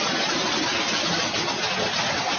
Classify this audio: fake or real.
real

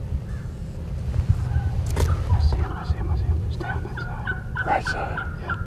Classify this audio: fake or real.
real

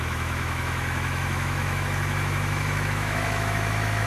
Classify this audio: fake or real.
fake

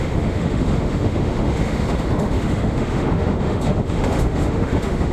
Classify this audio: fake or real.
fake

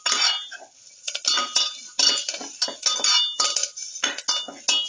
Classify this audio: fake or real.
real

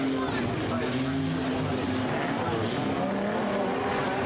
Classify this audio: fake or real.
real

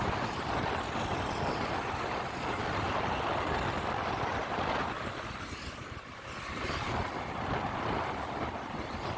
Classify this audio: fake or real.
real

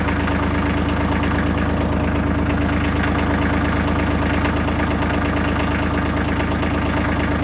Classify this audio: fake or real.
real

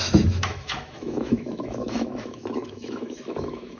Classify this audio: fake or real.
fake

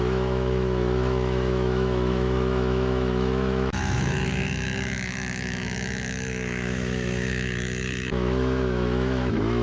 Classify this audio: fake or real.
fake